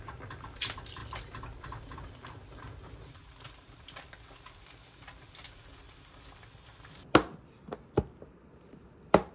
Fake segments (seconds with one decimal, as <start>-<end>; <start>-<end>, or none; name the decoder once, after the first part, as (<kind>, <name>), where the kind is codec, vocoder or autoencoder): 0.0-1.0 (vocoder, BigVGAN v2); 1.8-9.3